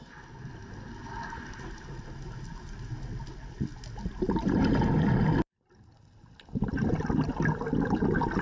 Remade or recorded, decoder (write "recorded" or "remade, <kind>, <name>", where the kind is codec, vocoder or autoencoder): recorded